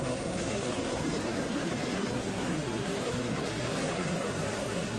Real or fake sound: fake